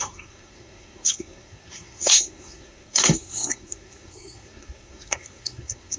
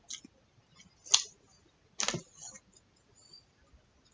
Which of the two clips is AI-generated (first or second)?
first